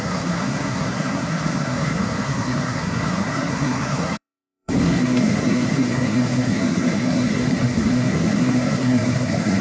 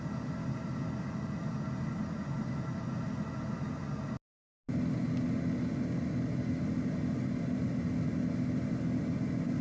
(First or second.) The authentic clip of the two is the second